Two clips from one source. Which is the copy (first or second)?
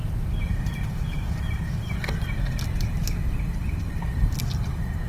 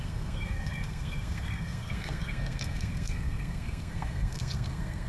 second